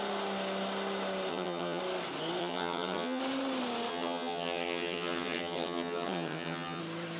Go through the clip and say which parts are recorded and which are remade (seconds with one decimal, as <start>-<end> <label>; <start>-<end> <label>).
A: 0.0-1.3 recorded; 1.3-1.8 remade; 1.8-2.4 recorded; 2.4-3.2 remade; 3.2-3.9 recorded; 3.9-6.8 remade; 6.8-7.2 recorded